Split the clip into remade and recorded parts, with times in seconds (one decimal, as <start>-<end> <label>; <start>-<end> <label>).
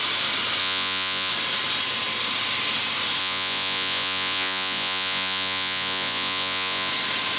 0.0-0.6 recorded; 0.6-1.3 remade; 1.3-3.2 recorded; 3.2-6.9 remade; 6.9-7.4 recorded